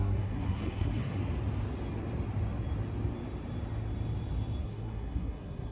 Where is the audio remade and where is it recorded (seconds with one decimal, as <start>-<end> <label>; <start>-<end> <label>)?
0.0-1.2 remade; 1.2-4.6 recorded; 4.6-5.7 remade